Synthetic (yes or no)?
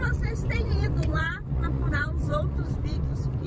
yes